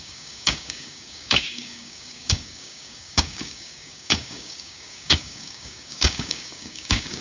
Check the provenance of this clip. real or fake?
fake